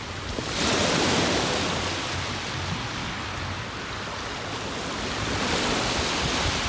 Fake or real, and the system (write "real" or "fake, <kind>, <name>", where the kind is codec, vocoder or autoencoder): real